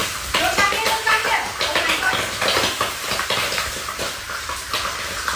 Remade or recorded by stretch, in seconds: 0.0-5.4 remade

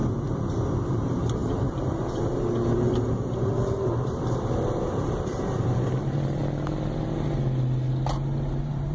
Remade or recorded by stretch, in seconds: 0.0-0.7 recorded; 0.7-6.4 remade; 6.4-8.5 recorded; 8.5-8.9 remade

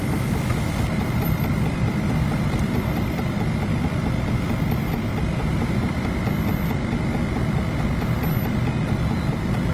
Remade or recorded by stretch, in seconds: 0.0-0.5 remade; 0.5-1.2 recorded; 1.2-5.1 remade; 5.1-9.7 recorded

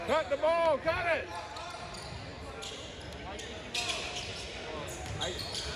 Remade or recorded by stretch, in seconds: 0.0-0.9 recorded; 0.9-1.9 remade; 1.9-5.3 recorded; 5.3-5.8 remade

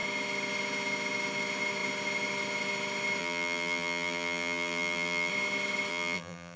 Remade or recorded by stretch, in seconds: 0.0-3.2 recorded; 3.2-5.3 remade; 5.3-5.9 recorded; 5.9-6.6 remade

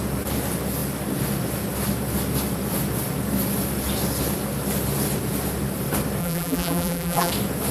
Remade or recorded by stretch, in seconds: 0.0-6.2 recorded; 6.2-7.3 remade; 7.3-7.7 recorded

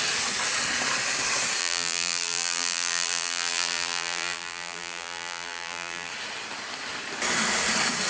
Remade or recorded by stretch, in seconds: 0.0-1.6 recorded; 1.6-6.1 remade; 6.1-8.1 recorded

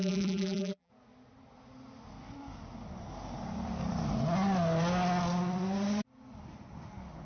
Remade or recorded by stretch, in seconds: 0.0-0.9 remade; 0.9-7.2 recorded